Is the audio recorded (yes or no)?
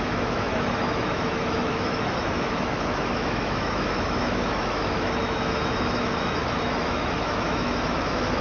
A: no